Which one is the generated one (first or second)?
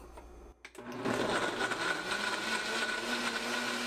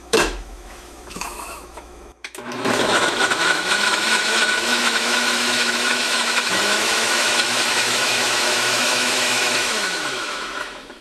second